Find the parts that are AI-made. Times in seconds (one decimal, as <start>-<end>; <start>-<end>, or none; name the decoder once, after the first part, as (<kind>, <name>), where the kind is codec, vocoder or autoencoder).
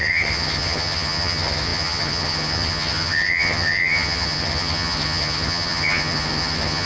0.0-6.8 (vocoder, HiFi-GAN)